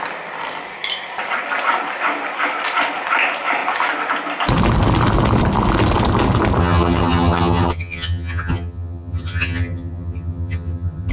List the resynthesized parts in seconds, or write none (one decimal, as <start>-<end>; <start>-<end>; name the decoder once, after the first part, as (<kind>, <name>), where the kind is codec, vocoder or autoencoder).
6.6-11.1 (vocoder, HiFi-GAN)